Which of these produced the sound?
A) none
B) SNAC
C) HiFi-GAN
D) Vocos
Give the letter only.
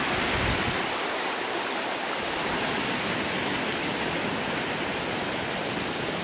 A